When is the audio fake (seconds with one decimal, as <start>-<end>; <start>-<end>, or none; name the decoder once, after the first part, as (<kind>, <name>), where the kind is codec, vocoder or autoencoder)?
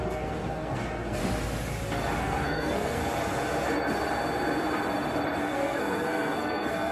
0.0-1.2 (codec, SNAC); 2.2-3.0; 5.4-6.9